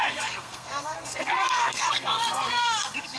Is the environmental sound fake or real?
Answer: fake